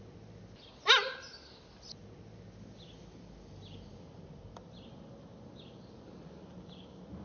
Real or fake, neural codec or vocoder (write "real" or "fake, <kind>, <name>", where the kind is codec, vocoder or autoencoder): real